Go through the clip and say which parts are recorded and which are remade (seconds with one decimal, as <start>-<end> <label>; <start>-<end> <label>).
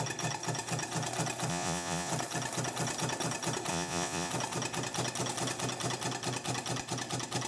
0.0-1.5 recorded; 1.5-2.1 remade; 2.1-3.7 recorded; 3.7-4.3 remade; 4.3-7.5 recorded